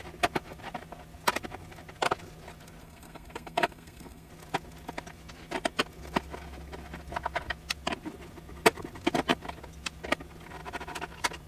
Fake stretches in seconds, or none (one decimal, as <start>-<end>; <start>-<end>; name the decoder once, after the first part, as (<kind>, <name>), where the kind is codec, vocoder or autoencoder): 2.8-4.3 (codec, SNAC)